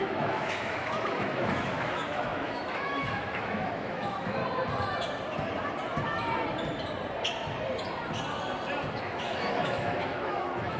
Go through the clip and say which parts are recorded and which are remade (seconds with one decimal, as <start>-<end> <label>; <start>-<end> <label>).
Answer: 0.0-4.4 remade; 4.4-9.0 recorded; 9.0-10.8 remade